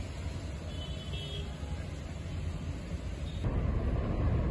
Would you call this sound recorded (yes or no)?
yes